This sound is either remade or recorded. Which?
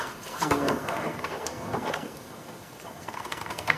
remade